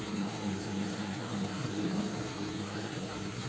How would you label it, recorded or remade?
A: remade